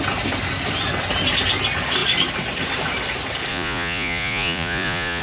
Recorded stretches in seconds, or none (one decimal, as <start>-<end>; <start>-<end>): 0.0-3.5